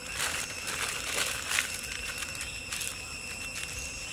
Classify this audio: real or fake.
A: real